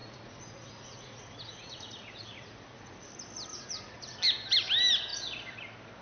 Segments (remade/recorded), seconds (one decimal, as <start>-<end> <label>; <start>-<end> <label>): 0.0-3.1 remade; 3.1-3.5 recorded; 3.5-4.2 remade; 4.2-6.0 recorded